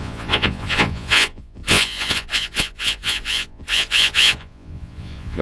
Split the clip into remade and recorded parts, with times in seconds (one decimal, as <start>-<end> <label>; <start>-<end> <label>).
0.0-5.4 remade